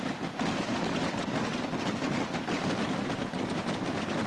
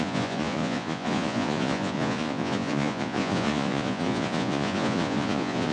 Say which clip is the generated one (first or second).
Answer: second